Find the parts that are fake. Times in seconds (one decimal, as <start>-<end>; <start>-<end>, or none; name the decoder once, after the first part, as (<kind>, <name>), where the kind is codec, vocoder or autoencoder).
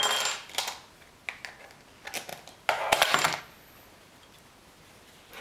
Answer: none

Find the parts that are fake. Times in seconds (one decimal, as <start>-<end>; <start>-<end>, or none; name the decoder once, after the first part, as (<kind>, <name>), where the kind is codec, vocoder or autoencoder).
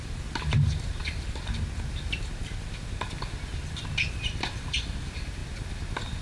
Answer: none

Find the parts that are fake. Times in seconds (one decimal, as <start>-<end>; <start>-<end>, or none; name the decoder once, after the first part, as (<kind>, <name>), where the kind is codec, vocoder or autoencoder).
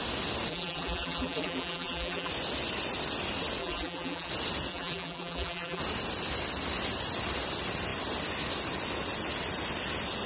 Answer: 0.5-2.3 (vocoder, BigVGAN v2); 3.6-4.3; 4.7-5.8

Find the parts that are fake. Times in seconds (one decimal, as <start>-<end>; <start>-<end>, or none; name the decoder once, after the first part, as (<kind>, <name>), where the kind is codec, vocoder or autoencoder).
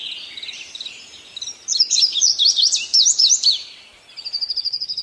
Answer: 0.0-3.9 (vocoder, BigVGAN v2); 4.5-5.0